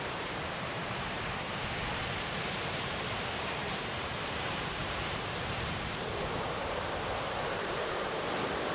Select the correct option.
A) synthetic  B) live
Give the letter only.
A